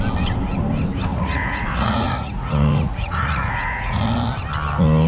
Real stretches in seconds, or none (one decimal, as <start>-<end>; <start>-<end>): 0.0-1.1; 4.0-5.1

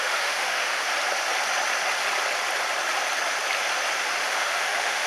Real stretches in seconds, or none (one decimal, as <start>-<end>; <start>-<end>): 0.9-4.0

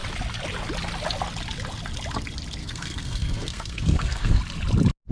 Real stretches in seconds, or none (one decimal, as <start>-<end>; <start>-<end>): 0.0-2.6; 4.4-5.1